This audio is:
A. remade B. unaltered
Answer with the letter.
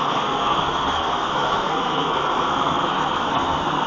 A